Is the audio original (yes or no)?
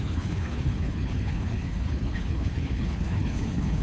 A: no